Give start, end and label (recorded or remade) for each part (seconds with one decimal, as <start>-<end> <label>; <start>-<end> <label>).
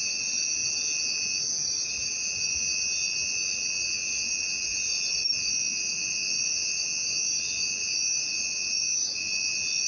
0.0-9.9 recorded